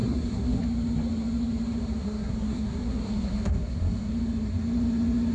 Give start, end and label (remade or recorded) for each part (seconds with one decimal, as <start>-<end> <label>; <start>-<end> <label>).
0.0-0.6 remade; 0.6-2.0 recorded; 2.0-4.1 remade; 4.1-5.3 recorded